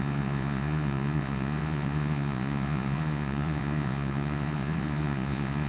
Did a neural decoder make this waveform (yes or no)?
yes